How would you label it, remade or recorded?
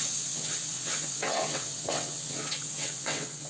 remade